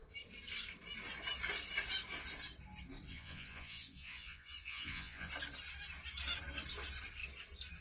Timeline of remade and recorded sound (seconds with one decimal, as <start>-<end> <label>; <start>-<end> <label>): 0.0-3.1 recorded; 3.1-5.3 remade; 5.3-7.8 recorded